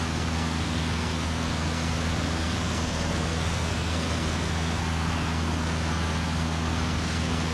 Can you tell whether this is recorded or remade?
remade